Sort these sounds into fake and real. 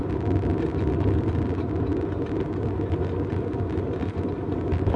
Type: real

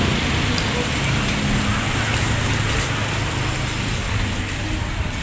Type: real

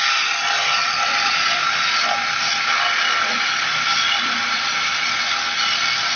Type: real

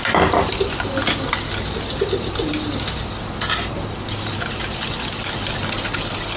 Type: real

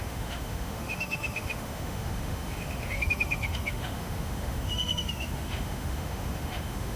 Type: fake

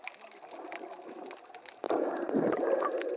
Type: real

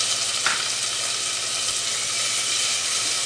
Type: real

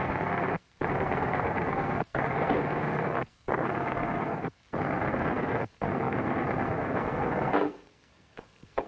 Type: fake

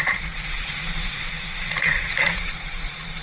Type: fake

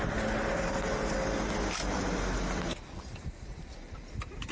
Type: real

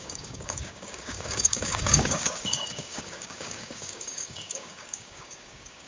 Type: fake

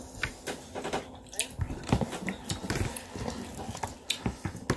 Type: real